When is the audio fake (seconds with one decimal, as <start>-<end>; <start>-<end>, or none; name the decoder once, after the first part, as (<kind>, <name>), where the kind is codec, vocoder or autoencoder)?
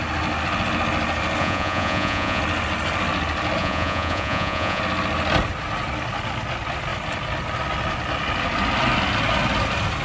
1.4-2.4 (vocoder, Vocos); 3.6-4.8